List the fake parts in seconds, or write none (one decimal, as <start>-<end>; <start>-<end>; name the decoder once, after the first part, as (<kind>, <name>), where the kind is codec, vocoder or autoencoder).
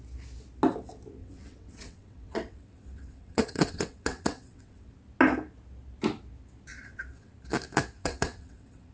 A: 1.2-4.9 (vocoder, WaveNeXt); 6.7-7.3; 8.0-8.9